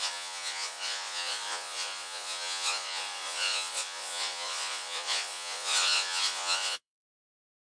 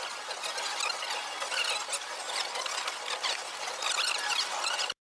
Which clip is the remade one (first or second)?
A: first